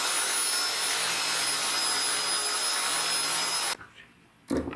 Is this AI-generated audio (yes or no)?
no